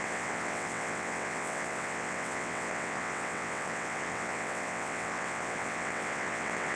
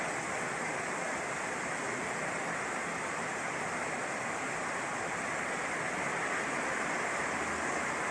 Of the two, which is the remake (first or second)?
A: first